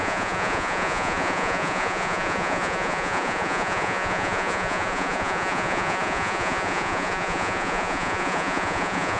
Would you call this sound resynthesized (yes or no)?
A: yes